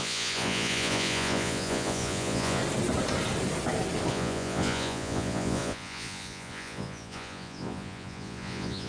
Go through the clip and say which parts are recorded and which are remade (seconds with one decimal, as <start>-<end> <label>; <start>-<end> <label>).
0.0-2.6 remade; 2.6-4.1 recorded; 4.1-8.9 remade